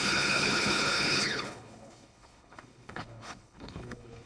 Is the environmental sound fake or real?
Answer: fake